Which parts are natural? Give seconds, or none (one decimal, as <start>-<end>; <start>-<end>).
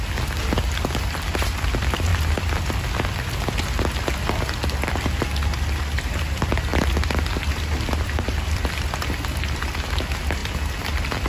0.0-2.1; 2.7-6.7; 9.1-11.3